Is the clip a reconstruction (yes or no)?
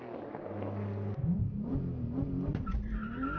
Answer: no